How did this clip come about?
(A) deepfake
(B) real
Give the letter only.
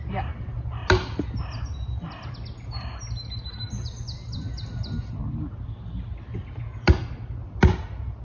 B